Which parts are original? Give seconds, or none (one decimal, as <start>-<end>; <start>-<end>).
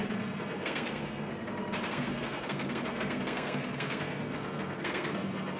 1.3-1.9